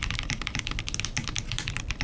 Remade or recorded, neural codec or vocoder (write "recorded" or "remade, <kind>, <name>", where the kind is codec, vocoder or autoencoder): recorded